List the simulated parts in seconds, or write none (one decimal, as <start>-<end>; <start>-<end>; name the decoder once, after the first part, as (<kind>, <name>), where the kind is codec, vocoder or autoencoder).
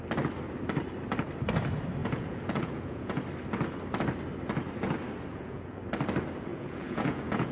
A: 2.0-3.2 (vocoder, Vocos); 5.3-5.8; 6.5-7.5